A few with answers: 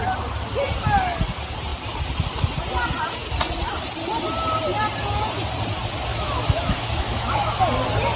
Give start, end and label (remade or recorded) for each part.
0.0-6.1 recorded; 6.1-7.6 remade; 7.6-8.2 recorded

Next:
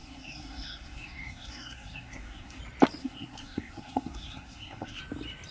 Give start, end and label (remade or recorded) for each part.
0.0-2.6 remade; 2.6-3.0 recorded; 3.0-5.0 remade; 5.0-5.5 recorded

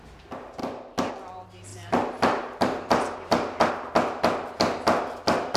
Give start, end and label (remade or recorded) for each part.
0.0-1.7 recorded; 1.7-3.7 remade; 3.7-5.6 recorded

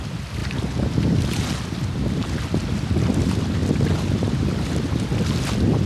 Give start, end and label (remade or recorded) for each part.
0.0-5.9 recorded

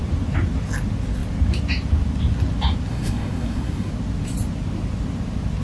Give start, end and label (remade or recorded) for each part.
0.0-2.9 recorded; 2.9-3.9 remade; 3.9-5.6 recorded